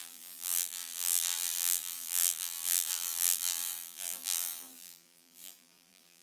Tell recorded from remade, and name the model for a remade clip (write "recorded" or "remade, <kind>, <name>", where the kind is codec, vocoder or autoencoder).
remade, vocoder, BigVGAN v2